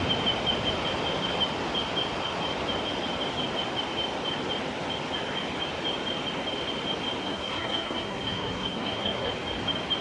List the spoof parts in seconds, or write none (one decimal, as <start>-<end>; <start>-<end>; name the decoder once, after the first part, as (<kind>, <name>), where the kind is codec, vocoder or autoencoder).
7.2-9.3 (codec, SNAC)